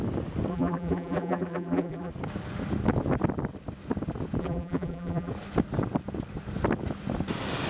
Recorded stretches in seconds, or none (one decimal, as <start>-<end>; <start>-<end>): 0.0-0.5; 2.1-4.4; 5.3-7.7